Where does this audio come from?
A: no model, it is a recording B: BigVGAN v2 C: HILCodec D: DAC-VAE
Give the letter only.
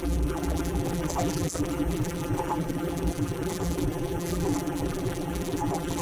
B